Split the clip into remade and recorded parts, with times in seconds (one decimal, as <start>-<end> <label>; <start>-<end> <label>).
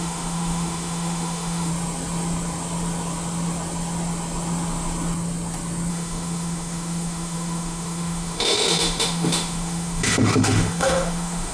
0.0-1.7 remade; 1.7-5.9 recorded; 5.9-11.5 remade